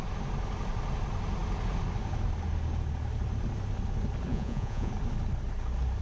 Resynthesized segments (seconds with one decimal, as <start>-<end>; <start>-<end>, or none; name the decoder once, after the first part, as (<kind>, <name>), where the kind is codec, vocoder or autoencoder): 4.3-4.9 (vocoder, Vocos)